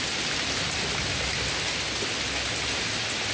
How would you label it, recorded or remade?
recorded